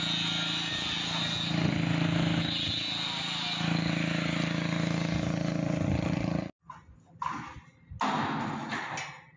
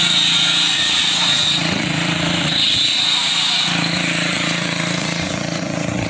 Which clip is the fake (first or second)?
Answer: second